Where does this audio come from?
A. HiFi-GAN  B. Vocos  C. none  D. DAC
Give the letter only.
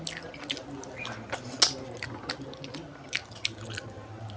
C